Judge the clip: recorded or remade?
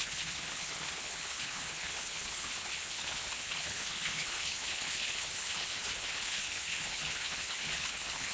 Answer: remade